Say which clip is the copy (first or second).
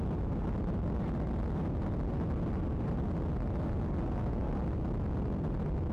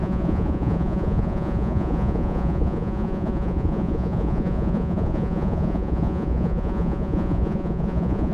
second